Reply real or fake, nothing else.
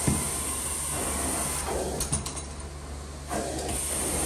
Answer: real